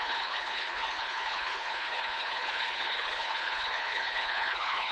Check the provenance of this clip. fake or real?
fake